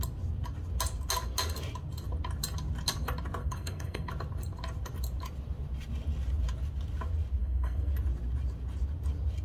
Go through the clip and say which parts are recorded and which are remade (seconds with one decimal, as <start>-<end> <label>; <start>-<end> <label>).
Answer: 0.0-3.4 recorded; 3.4-4.1 remade; 4.1-7.4 recorded; 7.4-7.9 remade; 7.9-9.4 recorded